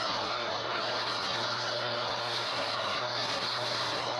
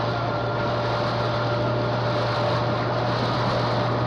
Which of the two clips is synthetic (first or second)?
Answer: first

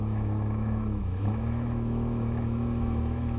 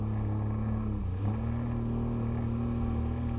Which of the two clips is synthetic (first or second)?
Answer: first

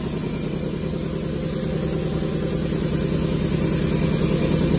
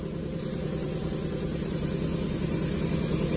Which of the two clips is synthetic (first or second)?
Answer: second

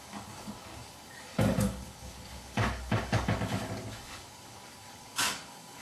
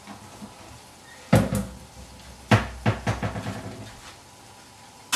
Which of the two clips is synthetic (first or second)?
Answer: first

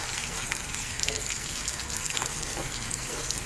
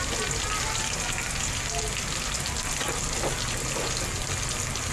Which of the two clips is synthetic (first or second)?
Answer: first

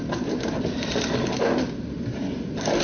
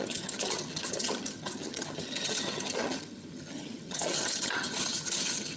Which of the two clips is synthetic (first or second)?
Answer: second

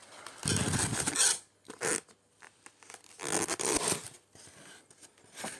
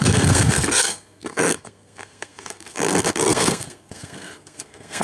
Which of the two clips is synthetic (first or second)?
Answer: second